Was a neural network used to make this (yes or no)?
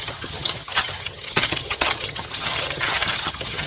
yes